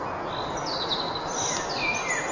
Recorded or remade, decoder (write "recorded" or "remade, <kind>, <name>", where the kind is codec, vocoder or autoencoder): recorded